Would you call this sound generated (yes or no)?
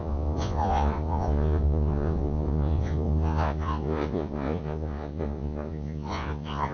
yes